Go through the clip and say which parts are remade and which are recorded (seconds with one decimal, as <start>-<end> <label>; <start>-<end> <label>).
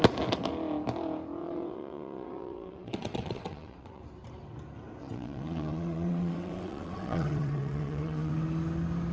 0.0-1.4 recorded; 1.4-4.0 remade; 4.0-5.0 recorded; 5.0-8.3 remade; 8.3-9.1 recorded